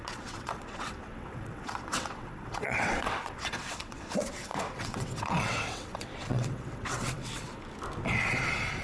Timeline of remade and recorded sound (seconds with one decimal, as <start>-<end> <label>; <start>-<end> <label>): 0.0-7.6 remade; 7.6-8.8 recorded